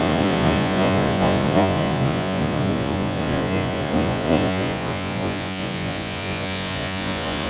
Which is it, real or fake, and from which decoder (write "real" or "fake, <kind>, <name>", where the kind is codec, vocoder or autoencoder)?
fake, vocoder, Vocos